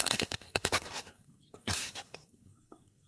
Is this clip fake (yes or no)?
yes